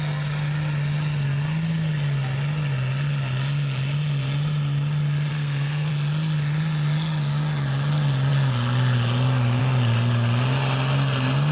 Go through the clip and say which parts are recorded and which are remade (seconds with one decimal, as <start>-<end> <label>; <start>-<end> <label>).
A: 0.0-5.3 recorded; 5.3-5.9 remade; 5.9-11.5 recorded